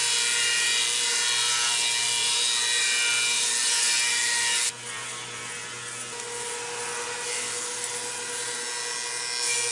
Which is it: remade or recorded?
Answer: recorded